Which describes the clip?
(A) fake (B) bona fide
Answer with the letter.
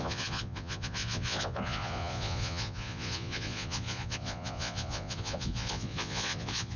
A